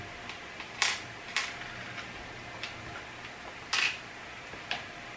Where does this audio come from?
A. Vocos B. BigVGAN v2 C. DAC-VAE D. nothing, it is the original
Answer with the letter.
D